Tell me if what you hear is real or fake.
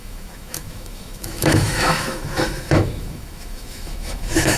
fake